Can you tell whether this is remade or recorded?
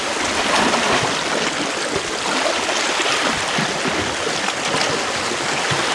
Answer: recorded